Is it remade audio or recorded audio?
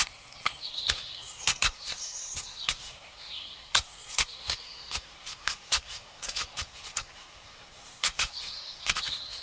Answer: remade